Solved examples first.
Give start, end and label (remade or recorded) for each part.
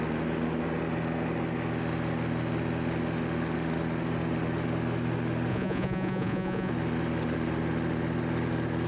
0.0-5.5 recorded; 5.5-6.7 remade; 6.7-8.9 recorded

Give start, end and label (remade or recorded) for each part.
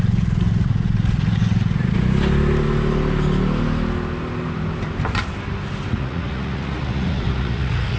0.0-1.8 remade; 1.8-5.9 recorded; 5.9-8.0 remade